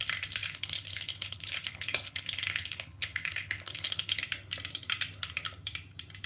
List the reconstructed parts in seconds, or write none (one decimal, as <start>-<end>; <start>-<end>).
0.4-4.2